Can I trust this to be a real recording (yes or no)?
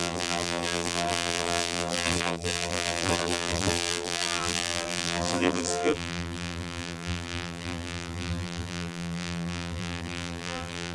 no